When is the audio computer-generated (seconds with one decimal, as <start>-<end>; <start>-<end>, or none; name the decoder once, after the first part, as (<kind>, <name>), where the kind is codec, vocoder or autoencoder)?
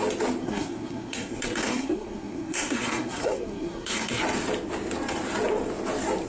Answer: 0.4-4.2 (codec, SNAC)